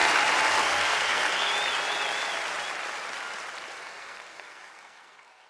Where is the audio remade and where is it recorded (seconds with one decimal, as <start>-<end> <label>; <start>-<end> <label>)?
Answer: 0.0-0.6 recorded; 0.6-1.5 remade; 1.5-3.7 recorded; 3.7-5.5 remade